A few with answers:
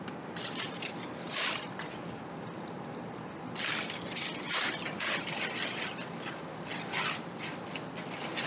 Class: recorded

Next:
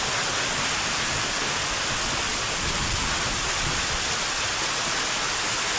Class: recorded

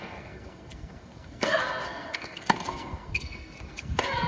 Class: remade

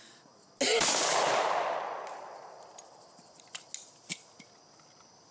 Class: recorded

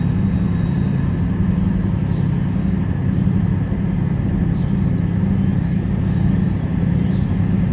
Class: recorded